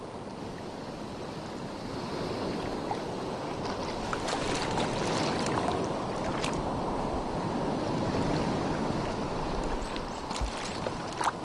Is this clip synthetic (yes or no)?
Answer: yes